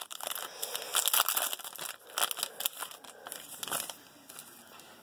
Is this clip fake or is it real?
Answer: real